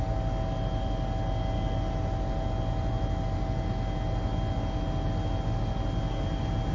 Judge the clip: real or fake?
real